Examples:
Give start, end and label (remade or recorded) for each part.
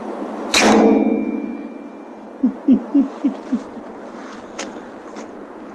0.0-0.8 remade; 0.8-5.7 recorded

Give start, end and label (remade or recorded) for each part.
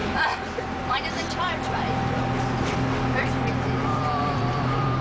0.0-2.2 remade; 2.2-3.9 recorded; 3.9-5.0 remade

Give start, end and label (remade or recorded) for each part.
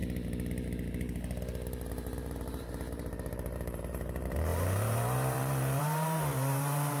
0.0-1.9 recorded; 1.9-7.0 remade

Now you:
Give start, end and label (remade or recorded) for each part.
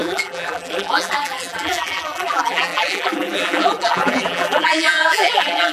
0.0-5.7 remade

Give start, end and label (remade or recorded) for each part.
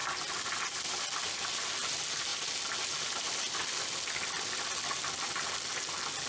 0.0-6.3 recorded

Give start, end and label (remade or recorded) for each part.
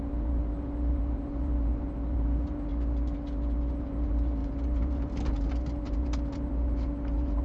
0.0-2.7 remade; 2.7-3.7 recorded; 3.7-7.4 remade